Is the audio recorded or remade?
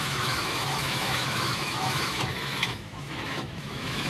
remade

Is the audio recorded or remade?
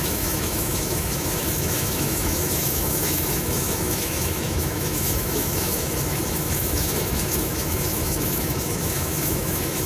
remade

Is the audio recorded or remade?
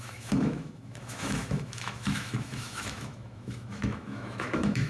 remade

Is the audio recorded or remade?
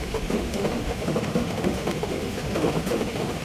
remade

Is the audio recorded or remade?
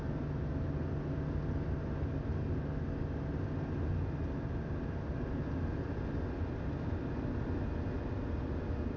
recorded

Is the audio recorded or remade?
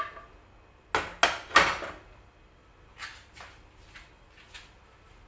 recorded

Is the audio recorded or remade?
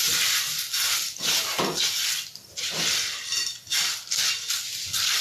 recorded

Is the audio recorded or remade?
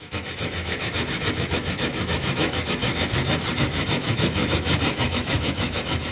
remade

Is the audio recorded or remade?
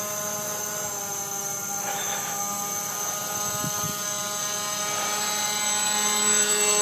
recorded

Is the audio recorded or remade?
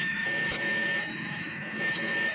remade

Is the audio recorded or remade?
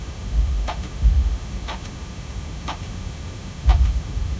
remade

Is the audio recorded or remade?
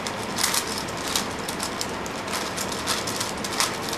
recorded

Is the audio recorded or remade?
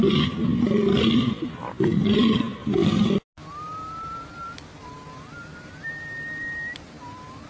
recorded